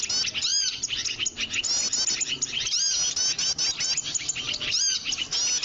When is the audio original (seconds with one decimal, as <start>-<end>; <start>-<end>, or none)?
0.0-5.6